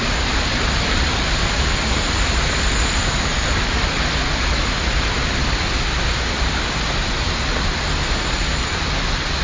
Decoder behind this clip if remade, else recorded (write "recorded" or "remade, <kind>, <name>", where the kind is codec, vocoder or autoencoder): recorded